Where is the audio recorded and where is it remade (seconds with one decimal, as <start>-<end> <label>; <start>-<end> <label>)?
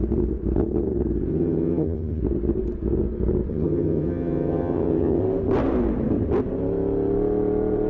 0.0-1.3 recorded; 1.3-2.2 remade; 2.2-3.5 recorded; 3.5-5.2 remade; 5.2-7.9 recorded